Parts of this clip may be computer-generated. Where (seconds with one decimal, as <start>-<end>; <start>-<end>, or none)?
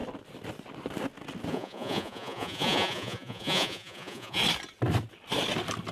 1.5-4.4